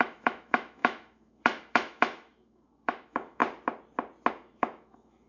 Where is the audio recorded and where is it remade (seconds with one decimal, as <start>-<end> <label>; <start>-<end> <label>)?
0.0-3.4 remade; 3.4-4.3 recorded; 4.3-5.3 remade